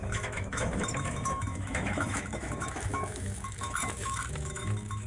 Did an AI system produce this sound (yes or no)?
yes